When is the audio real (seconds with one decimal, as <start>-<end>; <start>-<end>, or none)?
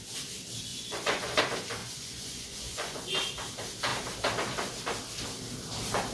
0.0-0.7; 1.4-1.8; 3.1-6.1